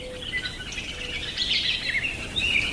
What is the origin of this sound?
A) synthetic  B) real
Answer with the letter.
B